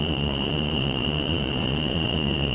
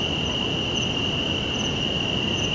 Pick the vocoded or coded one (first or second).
first